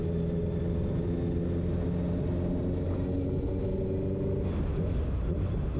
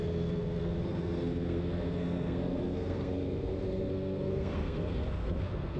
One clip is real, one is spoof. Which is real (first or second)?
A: first